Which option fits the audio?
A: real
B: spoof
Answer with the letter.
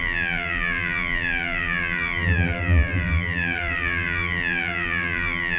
B